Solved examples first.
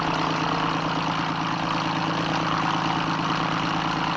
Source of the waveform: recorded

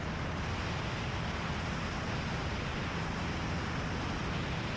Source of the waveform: recorded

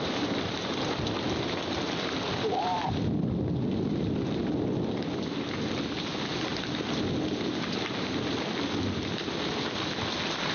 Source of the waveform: recorded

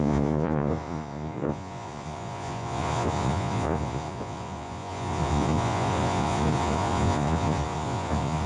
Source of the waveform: remade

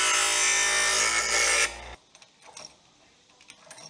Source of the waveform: recorded